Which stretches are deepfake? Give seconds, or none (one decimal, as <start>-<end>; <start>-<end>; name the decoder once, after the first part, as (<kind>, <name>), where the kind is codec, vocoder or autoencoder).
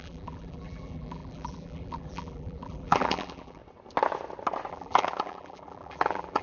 0.0-3.6 (vocoder, BigVGAN v2); 4.7-6.4